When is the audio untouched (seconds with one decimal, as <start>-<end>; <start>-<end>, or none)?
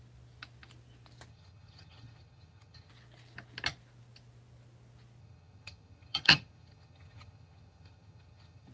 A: 0.0-1.3; 2.9-5.2